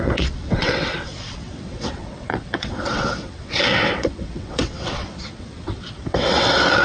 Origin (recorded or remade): remade